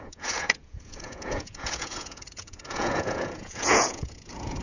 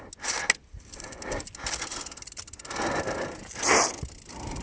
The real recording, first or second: second